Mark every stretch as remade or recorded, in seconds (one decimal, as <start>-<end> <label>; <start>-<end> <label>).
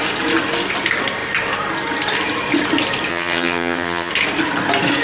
0.0-3.1 recorded; 3.1-4.1 remade; 4.1-5.0 recorded